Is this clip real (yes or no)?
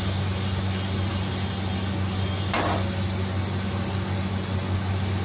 yes